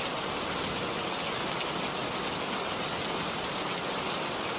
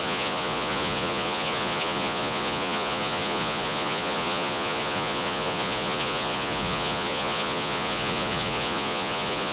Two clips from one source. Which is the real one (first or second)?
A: first